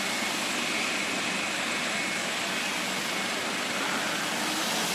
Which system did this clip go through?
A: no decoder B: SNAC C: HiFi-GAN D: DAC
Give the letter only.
A